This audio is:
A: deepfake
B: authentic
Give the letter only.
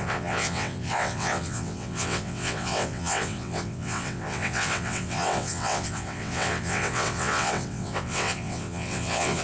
A